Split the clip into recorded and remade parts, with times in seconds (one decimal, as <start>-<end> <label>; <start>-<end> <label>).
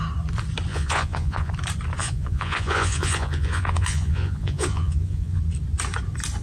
0.0-0.7 recorded; 0.7-1.5 remade; 1.5-2.0 recorded; 2.0-5.4 remade; 5.4-6.4 recorded